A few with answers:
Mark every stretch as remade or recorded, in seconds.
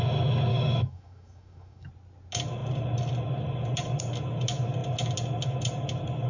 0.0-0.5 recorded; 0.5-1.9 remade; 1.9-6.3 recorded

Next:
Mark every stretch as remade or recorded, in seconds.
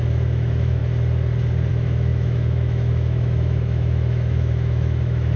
0.0-0.8 remade; 0.8-1.7 recorded; 1.7-5.4 remade